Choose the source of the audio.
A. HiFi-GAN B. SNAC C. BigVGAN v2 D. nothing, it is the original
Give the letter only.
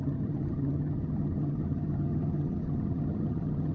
A